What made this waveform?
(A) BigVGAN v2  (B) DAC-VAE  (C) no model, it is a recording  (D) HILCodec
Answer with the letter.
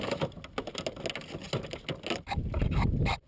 C